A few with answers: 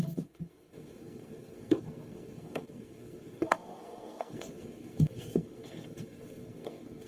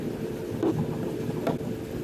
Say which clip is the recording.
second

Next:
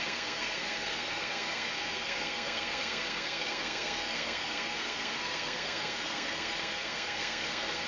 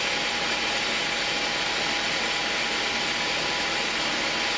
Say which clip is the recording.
second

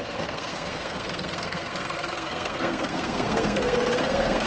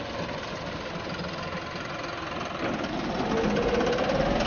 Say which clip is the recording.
second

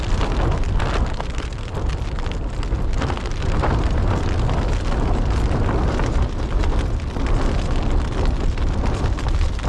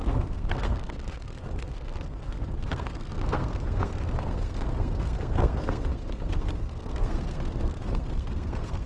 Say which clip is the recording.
first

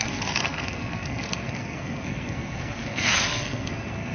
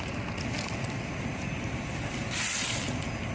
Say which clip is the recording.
second